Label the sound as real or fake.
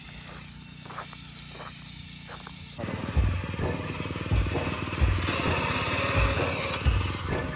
real